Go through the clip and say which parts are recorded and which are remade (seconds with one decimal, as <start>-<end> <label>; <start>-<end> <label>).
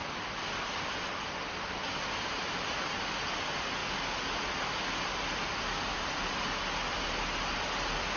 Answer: 0.0-8.2 recorded